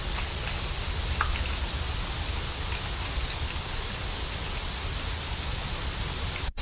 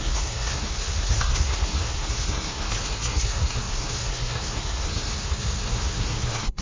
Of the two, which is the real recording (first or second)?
first